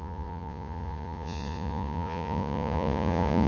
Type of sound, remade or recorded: remade